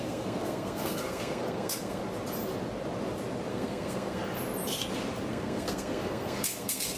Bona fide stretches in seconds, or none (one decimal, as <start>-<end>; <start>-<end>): 2.0-3.5; 4.2-5.3